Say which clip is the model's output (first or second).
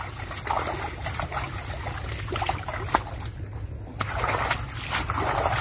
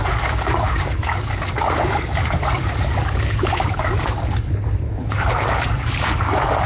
second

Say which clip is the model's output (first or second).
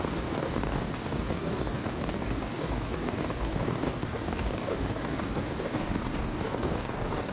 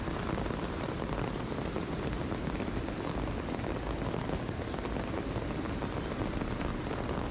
first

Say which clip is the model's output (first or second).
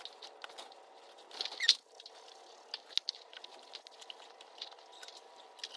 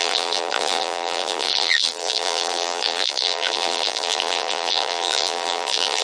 second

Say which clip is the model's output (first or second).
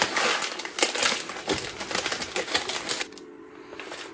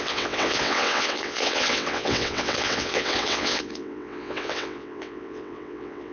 second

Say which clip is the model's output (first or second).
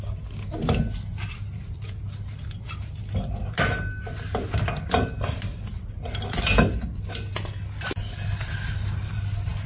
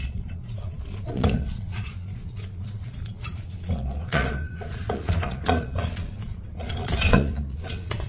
second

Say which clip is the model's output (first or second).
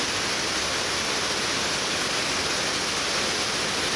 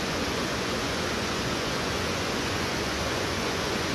second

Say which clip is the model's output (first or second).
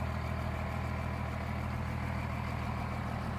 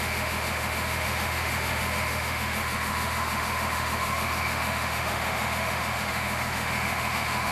second